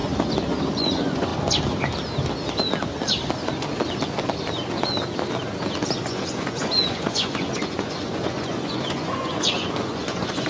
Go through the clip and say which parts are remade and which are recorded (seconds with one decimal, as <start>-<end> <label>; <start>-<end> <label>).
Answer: 0.0-0.7 recorded; 0.7-1.3 remade; 1.3-6.1 recorded; 6.1-10.5 remade